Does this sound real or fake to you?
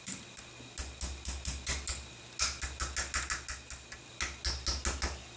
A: real